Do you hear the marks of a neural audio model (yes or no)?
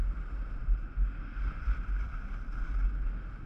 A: no